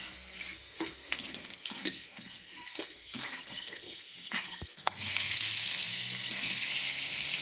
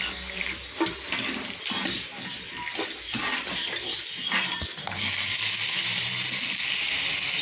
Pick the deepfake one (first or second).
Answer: first